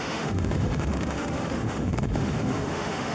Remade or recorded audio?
remade